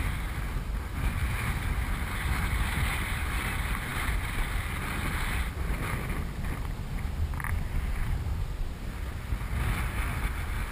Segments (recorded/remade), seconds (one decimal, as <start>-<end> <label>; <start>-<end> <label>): 0.0-10.7 recorded